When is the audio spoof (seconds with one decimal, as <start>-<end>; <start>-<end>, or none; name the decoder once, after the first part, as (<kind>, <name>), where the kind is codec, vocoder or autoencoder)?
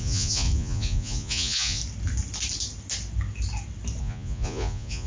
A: 0.0-1.8 (vocoder, Vocos); 4.0-5.1